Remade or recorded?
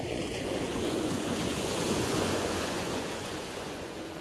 remade